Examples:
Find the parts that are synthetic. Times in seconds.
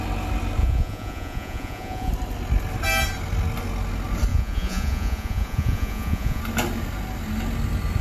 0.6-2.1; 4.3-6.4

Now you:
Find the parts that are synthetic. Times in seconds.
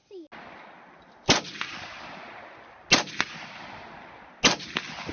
none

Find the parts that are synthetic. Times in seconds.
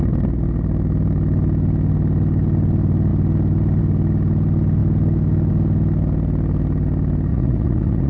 7.3-8.1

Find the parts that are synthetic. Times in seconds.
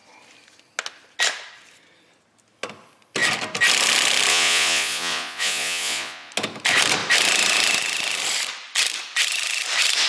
4.3-6.3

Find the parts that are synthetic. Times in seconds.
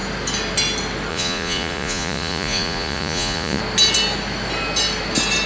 1.1-3.6